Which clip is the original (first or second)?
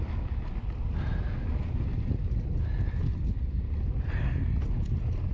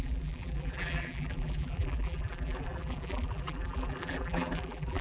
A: first